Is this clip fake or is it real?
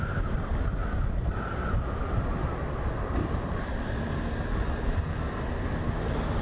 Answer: real